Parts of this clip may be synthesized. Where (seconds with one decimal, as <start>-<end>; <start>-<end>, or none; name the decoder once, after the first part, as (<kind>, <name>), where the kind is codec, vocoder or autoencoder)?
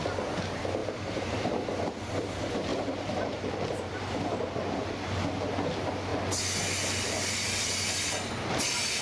0.8-1.5 (vocoder, BigVGAN v2); 2.7-4.9